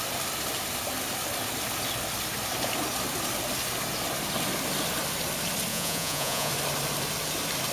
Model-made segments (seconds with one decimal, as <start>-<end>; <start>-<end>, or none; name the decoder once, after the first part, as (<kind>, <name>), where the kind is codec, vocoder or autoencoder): 5.7-6.5 (vocoder, Vocos)